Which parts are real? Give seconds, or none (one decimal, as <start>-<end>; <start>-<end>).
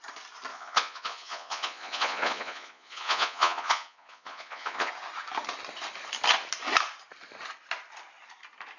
0.0-0.5; 4.9-8.8